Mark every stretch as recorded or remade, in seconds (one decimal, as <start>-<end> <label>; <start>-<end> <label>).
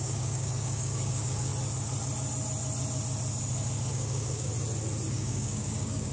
0.0-1.5 remade; 1.5-3.9 recorded; 3.9-4.5 remade; 4.5-5.1 recorded; 5.1-6.1 remade